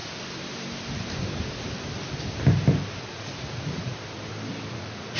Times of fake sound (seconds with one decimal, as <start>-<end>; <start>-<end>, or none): 3.1-3.9; 4.7-5.2